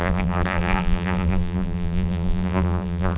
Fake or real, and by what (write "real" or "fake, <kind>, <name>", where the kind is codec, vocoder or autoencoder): fake, vocoder, BigVGAN v2